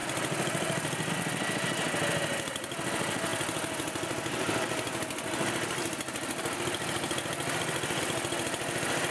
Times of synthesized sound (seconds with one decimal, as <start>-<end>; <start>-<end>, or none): none